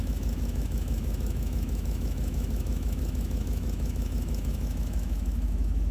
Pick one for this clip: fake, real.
fake